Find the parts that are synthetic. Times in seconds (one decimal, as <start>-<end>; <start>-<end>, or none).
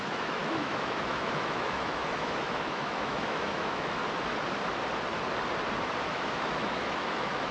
0.0-4.0; 6.0-7.5